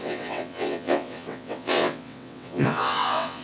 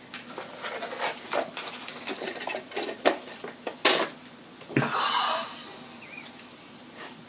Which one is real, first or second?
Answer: second